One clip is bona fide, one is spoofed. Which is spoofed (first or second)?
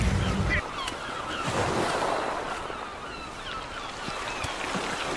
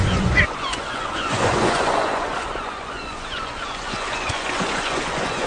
second